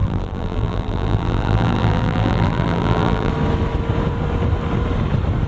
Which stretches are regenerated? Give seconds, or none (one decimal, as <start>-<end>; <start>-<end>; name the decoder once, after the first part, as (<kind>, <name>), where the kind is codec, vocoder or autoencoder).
0.0-3.3 (vocoder, BigVGAN v2)